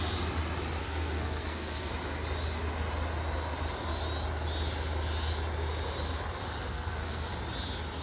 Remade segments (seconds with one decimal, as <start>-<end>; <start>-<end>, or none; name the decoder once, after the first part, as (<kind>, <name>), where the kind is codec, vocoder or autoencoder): 0.8-1.9 (codec, SNAC); 6.7-7.3